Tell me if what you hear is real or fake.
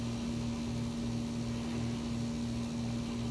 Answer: real